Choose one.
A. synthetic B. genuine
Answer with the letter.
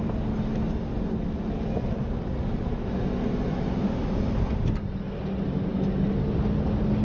B